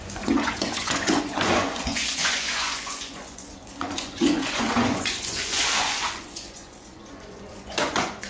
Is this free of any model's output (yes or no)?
no